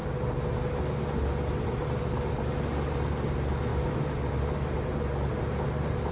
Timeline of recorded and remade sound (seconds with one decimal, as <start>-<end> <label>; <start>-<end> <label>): 0.0-6.1 recorded